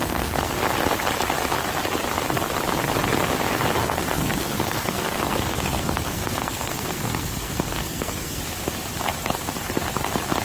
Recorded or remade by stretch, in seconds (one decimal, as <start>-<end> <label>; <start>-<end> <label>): 0.0-0.5 remade; 0.5-3.8 recorded; 3.8-8.4 remade; 8.4-10.4 recorded